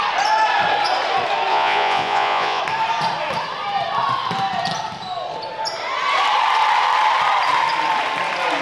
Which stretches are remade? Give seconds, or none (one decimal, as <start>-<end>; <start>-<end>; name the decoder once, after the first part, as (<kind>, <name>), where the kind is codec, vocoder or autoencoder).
1.5-2.6 (vocoder, Vocos)